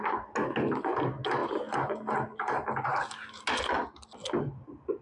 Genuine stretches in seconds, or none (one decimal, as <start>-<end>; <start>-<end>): 0.0-5.0